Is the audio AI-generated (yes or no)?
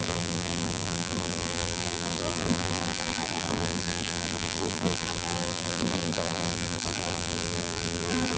yes